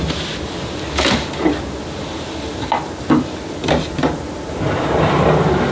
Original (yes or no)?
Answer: yes